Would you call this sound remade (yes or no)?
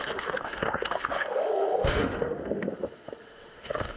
yes